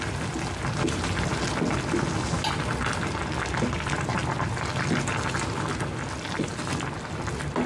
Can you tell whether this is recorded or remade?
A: recorded